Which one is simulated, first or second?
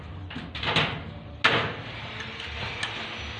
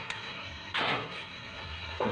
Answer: second